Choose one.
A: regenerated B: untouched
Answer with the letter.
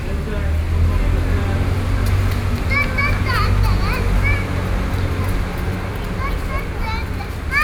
B